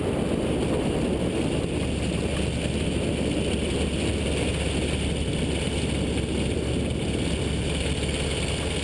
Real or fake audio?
real